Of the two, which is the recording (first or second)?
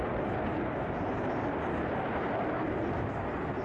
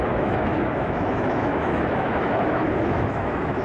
first